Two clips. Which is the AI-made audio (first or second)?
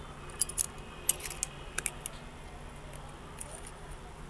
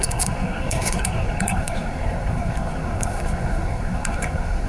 second